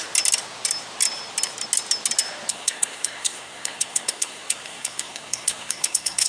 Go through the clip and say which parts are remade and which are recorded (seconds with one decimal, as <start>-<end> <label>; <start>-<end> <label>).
0.0-2.5 recorded; 2.5-6.3 remade